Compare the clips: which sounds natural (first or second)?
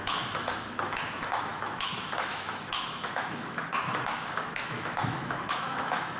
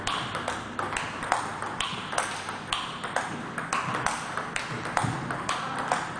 second